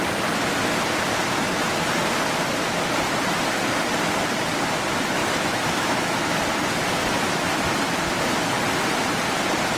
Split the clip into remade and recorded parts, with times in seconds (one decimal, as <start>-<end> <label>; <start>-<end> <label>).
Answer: 0.0-5.2 recorded; 5.2-6.4 remade; 6.4-7.0 recorded; 7.0-7.6 remade; 7.6-9.8 recorded